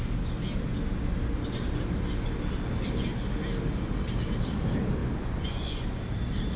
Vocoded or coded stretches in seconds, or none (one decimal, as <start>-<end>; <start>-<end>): 5.0-6.0